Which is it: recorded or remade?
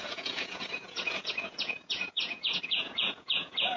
remade